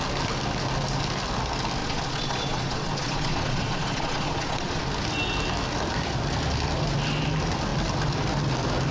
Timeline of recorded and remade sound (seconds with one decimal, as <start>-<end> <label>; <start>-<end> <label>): 0.0-1.8 recorded; 1.8-4.8 remade; 4.8-8.9 recorded